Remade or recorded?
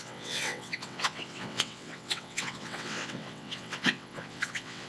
remade